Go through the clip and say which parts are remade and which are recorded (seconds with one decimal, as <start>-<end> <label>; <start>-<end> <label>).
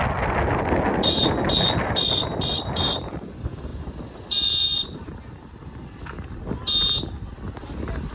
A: 0.0-8.1 recorded